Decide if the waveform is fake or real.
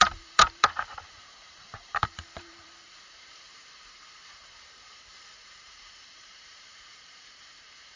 fake